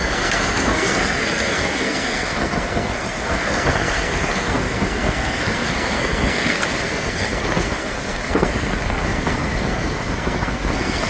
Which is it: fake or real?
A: fake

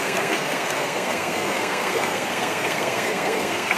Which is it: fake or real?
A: fake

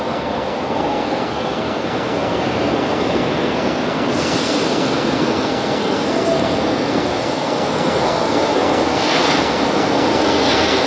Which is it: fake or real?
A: fake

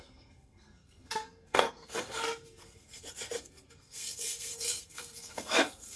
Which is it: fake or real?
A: fake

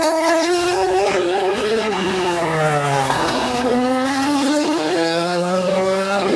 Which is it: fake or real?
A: fake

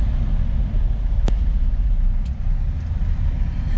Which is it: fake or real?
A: real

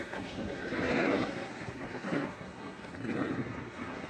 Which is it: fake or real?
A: fake